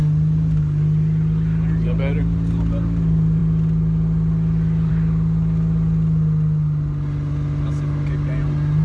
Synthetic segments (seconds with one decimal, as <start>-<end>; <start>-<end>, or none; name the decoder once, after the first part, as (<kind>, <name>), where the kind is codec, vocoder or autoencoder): none